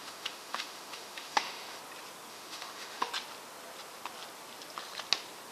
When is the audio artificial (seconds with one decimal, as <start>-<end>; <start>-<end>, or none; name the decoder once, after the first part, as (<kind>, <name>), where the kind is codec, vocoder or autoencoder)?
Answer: 0.0-1.8 (autoencoder, DAC-VAE); 2.3-3.1